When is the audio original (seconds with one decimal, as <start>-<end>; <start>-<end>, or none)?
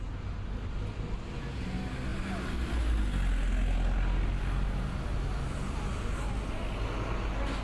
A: 0.0-7.6